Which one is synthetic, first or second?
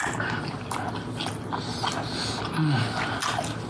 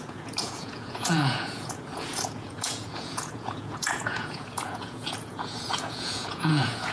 second